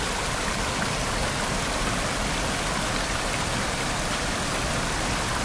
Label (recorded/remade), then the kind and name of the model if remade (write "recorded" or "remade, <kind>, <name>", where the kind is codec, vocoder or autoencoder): recorded